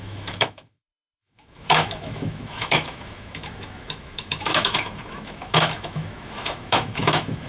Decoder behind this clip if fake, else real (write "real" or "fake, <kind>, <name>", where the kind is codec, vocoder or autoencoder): fake, autoencoder, DAC-VAE